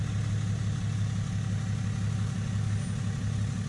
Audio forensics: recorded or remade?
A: recorded